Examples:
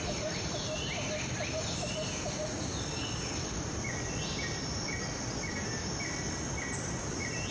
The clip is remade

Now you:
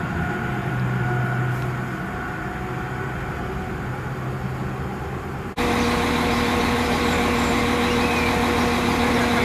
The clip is recorded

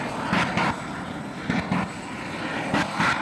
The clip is recorded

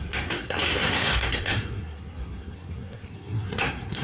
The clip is remade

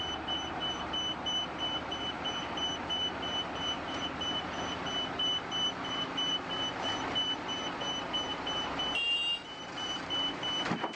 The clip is remade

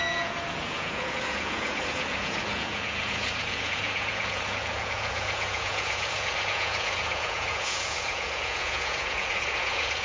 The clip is remade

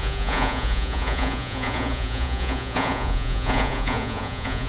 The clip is remade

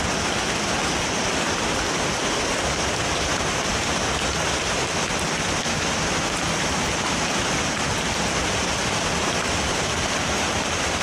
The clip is recorded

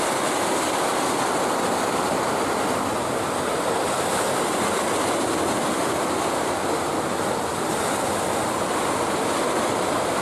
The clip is recorded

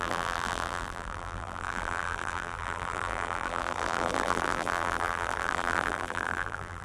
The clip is remade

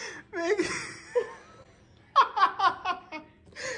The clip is recorded